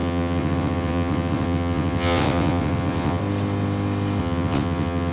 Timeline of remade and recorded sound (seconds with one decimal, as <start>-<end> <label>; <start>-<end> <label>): 0.0-3.2 remade; 3.2-4.2 recorded; 4.2-5.1 remade